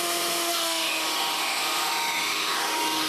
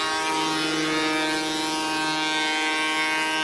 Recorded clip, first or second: second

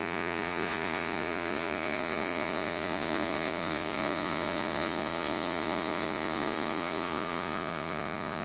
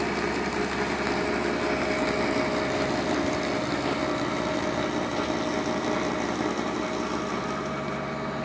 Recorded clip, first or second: second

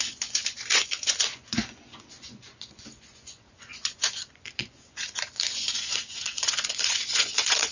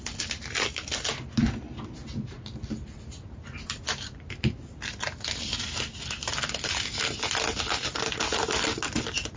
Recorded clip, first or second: second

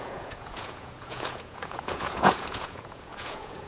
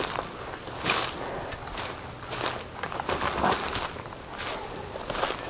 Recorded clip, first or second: second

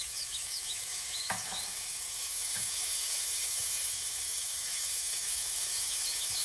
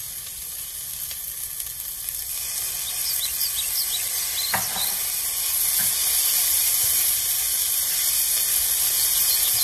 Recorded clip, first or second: second